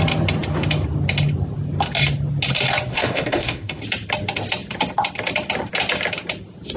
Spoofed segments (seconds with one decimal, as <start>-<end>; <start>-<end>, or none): 2.9-3.8